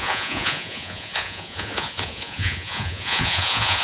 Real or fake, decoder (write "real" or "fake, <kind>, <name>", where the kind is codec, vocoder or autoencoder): fake, vocoder, Vocos